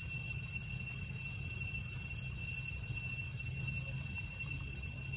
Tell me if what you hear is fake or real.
real